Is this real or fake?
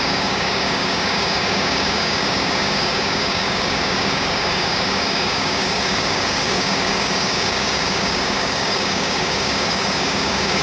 fake